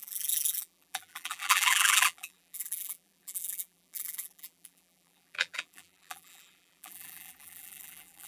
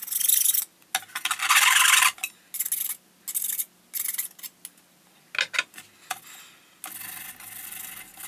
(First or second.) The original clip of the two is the second